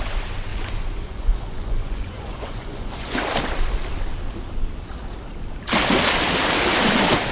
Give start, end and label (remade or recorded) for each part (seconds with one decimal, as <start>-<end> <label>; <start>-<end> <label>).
0.0-0.5 recorded; 0.5-3.2 remade; 3.2-7.3 recorded